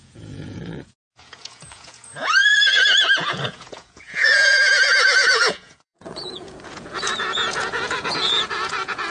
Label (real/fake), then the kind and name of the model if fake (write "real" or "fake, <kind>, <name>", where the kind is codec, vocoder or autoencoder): fake, vocoder, Vocos